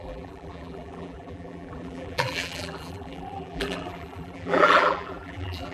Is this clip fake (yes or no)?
yes